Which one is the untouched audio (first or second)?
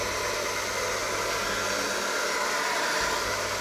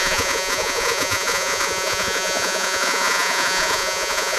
first